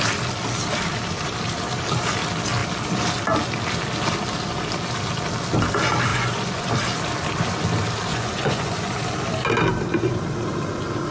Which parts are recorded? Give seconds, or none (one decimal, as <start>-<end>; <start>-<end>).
0.0-6.1; 6.7-8.1; 9.0-11.1